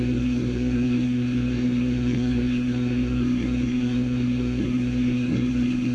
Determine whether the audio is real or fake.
fake